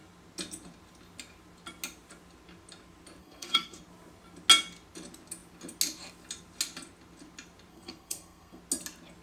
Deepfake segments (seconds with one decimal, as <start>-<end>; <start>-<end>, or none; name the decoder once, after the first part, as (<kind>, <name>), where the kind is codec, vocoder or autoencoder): 3.2-3.8 (codec, SNAC); 7.7-8.6